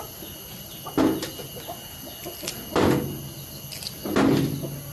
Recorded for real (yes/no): yes